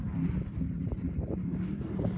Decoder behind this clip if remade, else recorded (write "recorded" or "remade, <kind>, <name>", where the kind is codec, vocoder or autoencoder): recorded